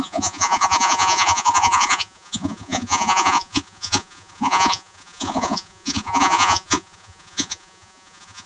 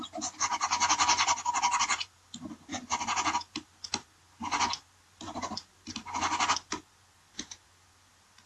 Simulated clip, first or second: first